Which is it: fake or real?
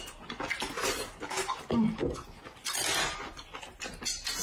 real